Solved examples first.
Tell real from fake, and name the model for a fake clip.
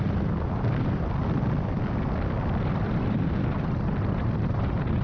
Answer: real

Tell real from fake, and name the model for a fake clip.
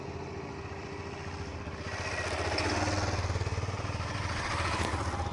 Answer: real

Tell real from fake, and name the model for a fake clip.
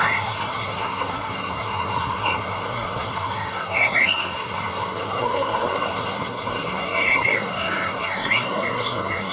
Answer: fake, codec, SNAC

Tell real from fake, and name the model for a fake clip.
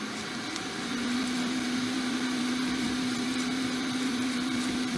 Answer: fake, vocoder, BigVGAN v2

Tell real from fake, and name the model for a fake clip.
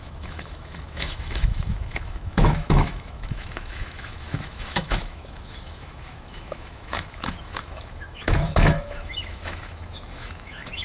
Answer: fake, autoencoder, DAC-VAE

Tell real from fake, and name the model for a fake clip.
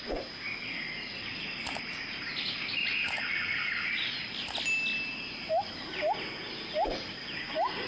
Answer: real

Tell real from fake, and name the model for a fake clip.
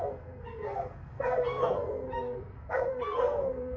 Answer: fake, codec, SNAC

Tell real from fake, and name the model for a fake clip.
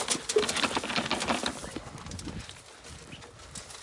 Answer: real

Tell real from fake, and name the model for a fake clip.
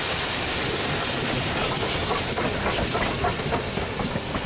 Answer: real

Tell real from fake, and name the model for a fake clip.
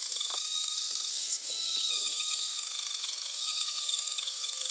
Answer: fake, codec, SNAC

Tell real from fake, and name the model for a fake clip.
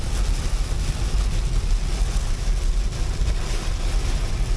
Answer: real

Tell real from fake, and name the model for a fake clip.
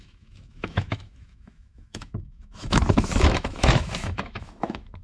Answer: fake, autoencoder, DAC-VAE